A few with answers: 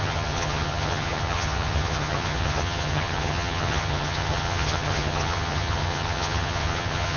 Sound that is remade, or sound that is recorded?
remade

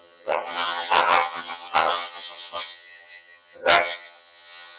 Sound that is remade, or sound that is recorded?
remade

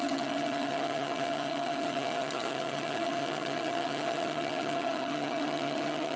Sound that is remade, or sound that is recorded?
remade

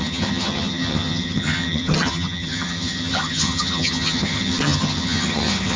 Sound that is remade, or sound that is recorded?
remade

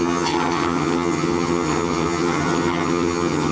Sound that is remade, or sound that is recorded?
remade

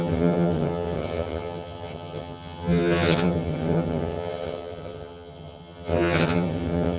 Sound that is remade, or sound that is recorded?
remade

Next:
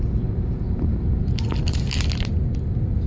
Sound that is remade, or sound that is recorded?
recorded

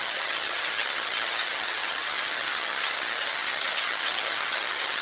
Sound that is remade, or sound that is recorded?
remade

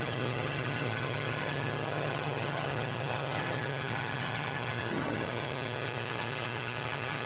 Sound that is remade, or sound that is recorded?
remade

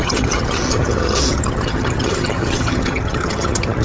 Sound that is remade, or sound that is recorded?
remade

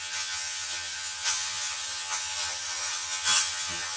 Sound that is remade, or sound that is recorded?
remade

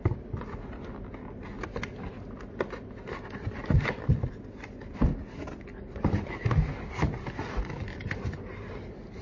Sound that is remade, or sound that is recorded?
recorded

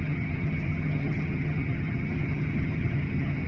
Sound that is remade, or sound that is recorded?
remade